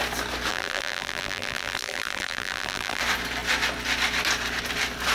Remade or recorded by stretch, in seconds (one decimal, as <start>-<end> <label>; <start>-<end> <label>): 0.0-0.5 recorded; 0.5-3.0 remade; 3.0-5.1 recorded